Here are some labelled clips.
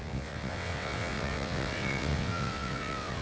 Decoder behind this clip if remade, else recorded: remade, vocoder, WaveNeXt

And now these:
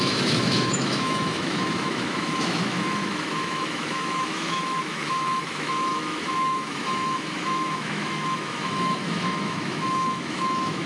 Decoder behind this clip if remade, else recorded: remade, autoencoder, DAC-VAE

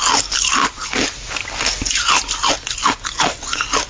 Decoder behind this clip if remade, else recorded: recorded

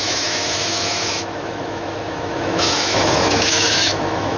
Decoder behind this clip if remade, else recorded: remade, autoencoder, DAC-VAE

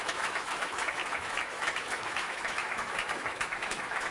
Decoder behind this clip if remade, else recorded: remade, autoencoder, DAC-VAE